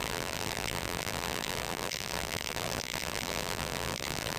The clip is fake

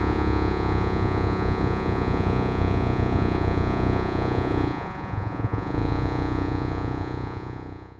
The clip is fake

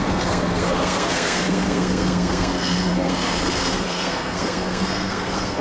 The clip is fake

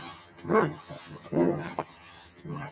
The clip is fake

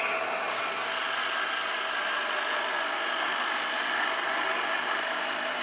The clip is real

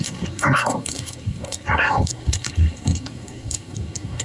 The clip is fake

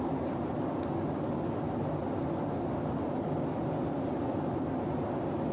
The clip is real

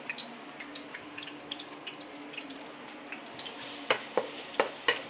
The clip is real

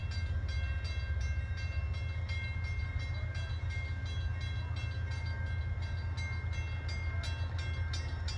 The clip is real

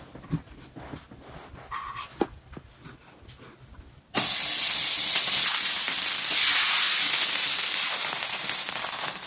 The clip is real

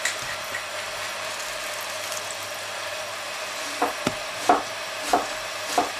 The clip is real